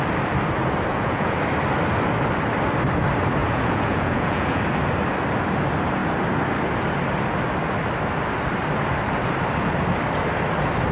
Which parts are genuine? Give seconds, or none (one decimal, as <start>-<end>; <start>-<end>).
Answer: 0.0-0.9; 1.4-3.4; 4.6-10.9